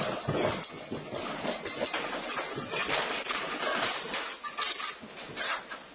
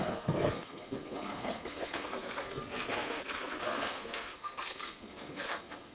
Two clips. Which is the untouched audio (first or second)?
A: first